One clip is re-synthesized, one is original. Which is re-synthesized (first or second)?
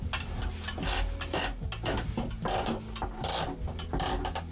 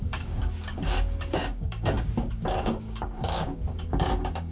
second